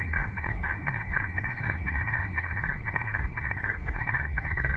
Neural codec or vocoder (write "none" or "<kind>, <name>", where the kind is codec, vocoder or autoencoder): codec, SNAC